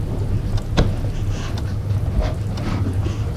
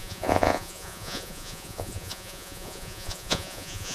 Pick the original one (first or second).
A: first